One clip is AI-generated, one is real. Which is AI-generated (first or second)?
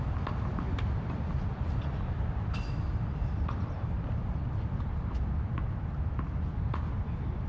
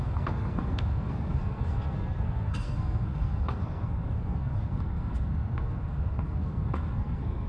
second